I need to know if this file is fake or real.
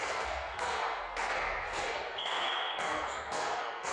fake